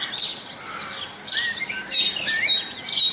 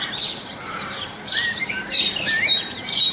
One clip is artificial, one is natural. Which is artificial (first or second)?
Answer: second